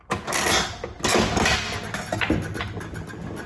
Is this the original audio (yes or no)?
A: yes